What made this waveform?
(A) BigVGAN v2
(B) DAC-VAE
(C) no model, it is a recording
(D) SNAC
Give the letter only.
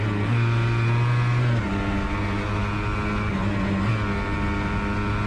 C